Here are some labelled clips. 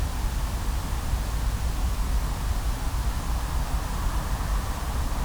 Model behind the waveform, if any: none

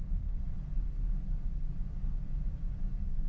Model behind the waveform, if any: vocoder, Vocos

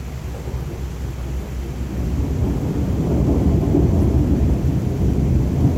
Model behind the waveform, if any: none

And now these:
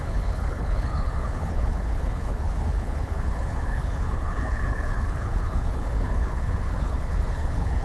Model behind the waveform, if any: codec, HILCodec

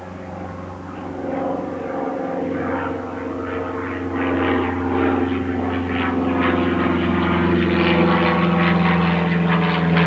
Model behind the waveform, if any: none